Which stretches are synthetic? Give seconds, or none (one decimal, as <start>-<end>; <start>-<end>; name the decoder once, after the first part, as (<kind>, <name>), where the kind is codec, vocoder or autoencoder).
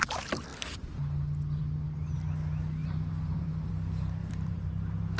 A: 2.8-3.7 (vocoder, BigVGAN v2); 4.2-4.7